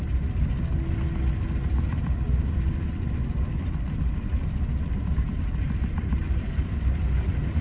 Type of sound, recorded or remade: recorded